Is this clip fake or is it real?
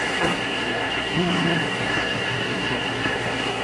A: fake